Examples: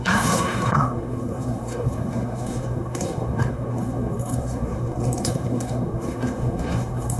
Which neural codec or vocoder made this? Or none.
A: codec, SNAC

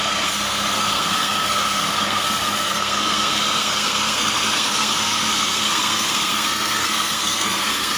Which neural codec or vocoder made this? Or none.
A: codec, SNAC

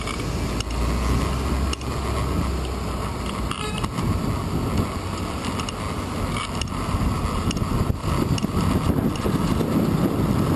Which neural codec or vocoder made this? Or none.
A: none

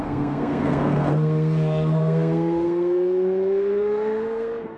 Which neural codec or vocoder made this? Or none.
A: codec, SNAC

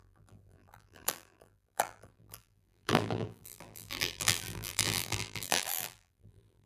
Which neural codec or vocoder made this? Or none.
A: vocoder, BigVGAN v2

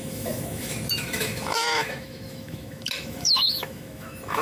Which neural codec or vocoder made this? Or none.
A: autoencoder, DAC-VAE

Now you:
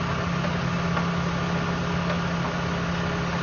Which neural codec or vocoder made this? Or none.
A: none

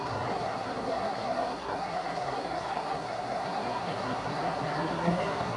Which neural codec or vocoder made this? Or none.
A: codec, SNAC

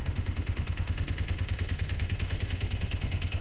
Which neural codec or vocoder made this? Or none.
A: autoencoder, DAC-VAE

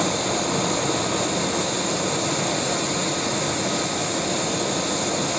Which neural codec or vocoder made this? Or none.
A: none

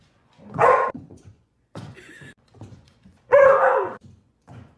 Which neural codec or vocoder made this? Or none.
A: vocoder, Vocos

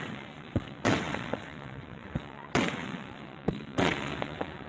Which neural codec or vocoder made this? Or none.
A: vocoder, WaveNeXt